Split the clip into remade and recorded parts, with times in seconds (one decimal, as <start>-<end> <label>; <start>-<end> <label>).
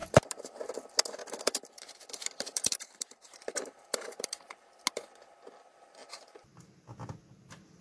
0.0-0.6 remade; 0.6-1.2 recorded; 1.2-4.8 remade; 4.8-6.0 recorded; 6.0-6.6 remade; 6.6-7.8 recorded